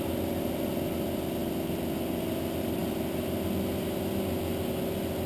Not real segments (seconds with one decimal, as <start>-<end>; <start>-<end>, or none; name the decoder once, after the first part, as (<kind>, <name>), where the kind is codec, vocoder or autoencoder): none